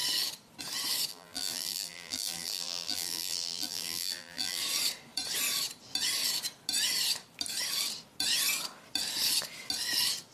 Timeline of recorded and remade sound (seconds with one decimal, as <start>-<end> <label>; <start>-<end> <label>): 0.0-1.1 recorded; 1.1-4.6 remade; 4.6-10.3 recorded